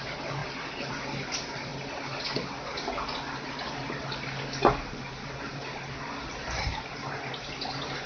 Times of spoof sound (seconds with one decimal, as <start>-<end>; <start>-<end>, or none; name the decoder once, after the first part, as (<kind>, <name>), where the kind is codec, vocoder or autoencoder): none